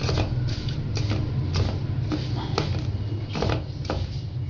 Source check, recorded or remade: recorded